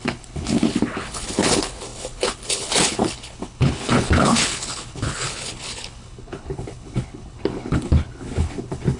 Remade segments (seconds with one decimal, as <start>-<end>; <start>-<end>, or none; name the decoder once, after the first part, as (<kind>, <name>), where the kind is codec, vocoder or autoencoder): 0.0-9.0 (codec, HILCodec)